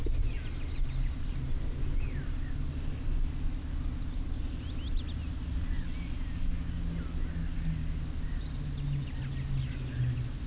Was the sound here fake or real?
real